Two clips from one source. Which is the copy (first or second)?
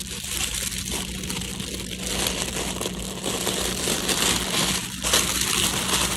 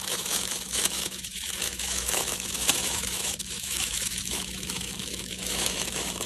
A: second